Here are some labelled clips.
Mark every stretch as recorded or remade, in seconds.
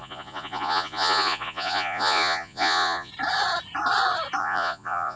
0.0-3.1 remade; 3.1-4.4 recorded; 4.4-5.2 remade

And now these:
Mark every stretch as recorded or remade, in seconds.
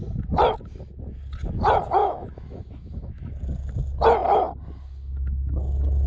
0.0-2.0 recorded; 2.0-3.3 remade; 3.3-6.1 recorded